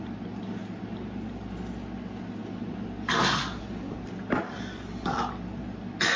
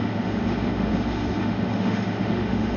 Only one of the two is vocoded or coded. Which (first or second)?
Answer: second